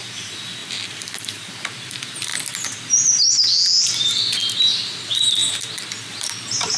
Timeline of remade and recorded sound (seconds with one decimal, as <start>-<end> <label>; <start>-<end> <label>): 0.0-2.3 remade; 2.3-4.6 recorded; 4.6-5.4 remade; 5.4-6.0 recorded; 6.0-6.8 remade